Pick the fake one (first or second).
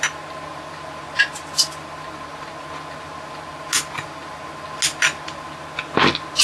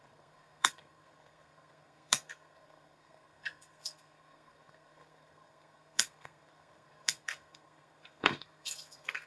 second